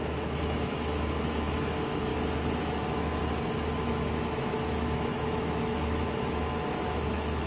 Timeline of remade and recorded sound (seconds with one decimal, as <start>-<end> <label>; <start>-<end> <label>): 0.0-2.1 remade; 2.1-2.6 recorded; 2.6-3.2 remade; 3.2-3.8 recorded; 3.8-7.5 remade

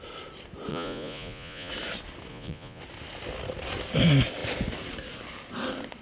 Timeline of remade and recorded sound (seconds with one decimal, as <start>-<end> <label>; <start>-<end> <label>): 0.0-0.7 recorded; 0.7-1.7 remade; 1.7-2.3 recorded; 2.3-2.8 remade; 2.8-6.0 recorded

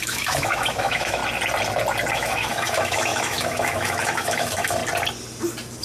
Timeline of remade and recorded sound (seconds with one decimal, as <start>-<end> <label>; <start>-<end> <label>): 0.0-1.2 remade; 1.2-2.1 recorded; 2.1-4.8 remade; 4.8-5.8 recorded

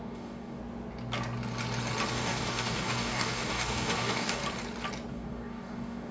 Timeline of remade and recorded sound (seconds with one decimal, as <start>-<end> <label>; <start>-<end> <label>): 0.0-0.6 remade; 0.6-2.1 recorded; 2.1-4.4 remade; 4.4-5.1 recorded; 5.1-6.1 remade

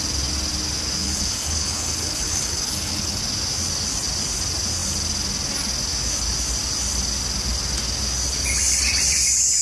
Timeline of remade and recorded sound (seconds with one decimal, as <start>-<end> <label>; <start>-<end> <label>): 0.0-1.0 recorded; 1.0-3.2 remade; 3.2-9.6 recorded

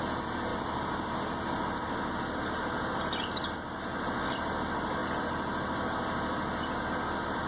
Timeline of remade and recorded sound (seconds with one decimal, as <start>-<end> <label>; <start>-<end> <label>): 0.0-7.5 recorded

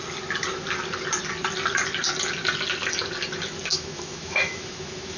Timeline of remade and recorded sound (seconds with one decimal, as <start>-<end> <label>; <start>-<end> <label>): 0.0-3.7 recorded; 3.7-5.2 remade

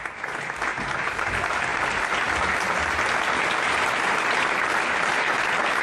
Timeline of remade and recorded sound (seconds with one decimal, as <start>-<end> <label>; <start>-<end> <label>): 0.0-0.7 recorded; 0.7-1.2 remade; 1.2-5.8 recorded